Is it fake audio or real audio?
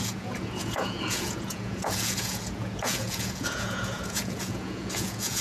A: fake